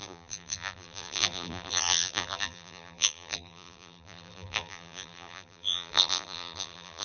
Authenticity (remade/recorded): remade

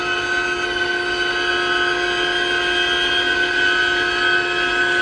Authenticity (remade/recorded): recorded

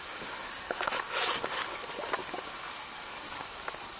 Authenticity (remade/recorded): recorded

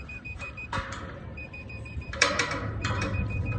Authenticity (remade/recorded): remade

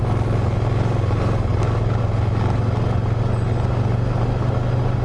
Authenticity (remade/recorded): recorded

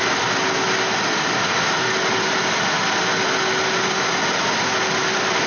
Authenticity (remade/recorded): recorded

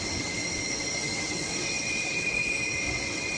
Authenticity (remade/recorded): remade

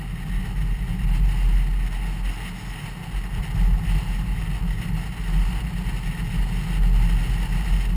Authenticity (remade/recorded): recorded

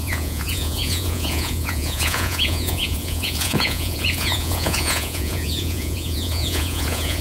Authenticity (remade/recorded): remade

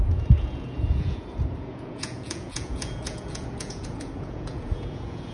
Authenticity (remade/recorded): remade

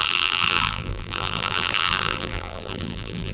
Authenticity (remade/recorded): remade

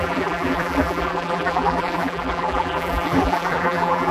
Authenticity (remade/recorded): remade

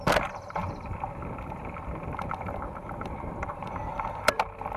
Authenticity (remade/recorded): remade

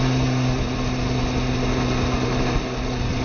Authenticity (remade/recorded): recorded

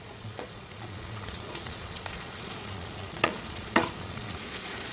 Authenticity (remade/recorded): remade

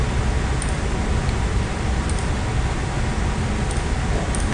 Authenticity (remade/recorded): recorded